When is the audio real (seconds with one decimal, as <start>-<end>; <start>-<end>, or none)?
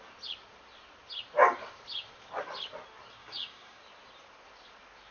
0.0-3.2; 3.8-5.1